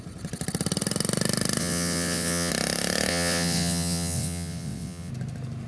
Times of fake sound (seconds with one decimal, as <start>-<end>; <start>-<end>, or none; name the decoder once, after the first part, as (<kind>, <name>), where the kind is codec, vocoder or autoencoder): 1.6-2.5 (vocoder, WaveNeXt); 3.1-5.1